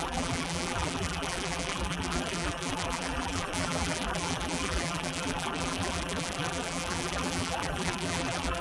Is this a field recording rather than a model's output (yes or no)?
no